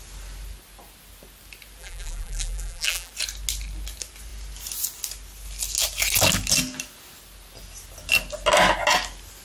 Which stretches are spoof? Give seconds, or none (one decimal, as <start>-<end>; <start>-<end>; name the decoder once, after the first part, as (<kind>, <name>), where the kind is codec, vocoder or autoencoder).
1.8-3.1 (vocoder, BigVGAN v2)